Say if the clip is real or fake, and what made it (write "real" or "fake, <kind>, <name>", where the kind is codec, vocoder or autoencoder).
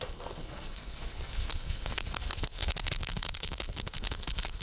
fake, codec, SNAC